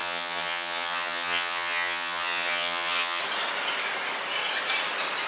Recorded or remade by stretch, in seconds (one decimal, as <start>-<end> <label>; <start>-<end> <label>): 0.0-3.2 remade; 3.2-5.3 recorded